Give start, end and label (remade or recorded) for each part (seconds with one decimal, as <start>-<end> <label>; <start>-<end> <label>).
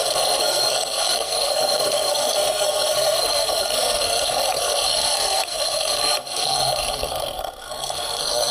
0.0-8.5 remade